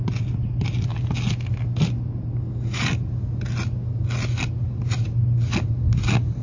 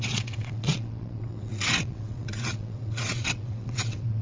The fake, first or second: second